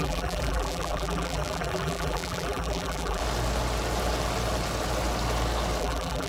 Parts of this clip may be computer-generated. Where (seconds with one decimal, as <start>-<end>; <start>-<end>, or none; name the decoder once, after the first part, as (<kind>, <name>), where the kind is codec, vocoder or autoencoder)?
0.0-3.2 (vocoder, BigVGAN v2); 5.8-6.3